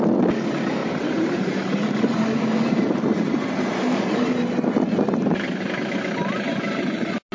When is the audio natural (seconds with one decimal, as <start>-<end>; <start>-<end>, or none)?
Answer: 0.0-0.8; 4.3-7.3